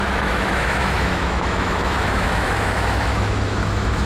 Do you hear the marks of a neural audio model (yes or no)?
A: yes